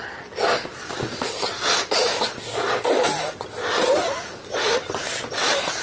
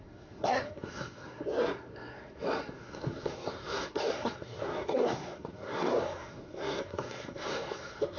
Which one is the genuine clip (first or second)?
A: first